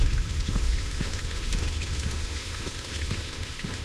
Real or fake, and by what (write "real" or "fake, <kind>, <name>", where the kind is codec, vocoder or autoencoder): fake, autoencoder, DAC-VAE